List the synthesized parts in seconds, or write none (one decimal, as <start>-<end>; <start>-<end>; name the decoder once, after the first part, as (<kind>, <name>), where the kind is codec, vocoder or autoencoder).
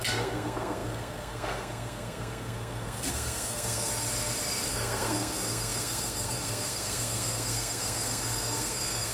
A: 0.0-3.9 (codec, SNAC); 4.7-9.1